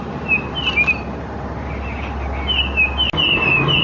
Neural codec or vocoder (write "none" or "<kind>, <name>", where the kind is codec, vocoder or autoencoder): none